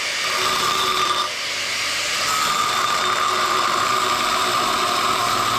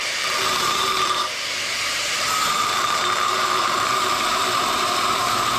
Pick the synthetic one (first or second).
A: second